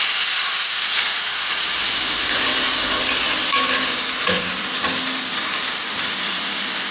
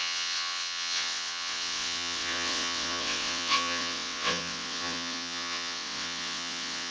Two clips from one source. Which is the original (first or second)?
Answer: first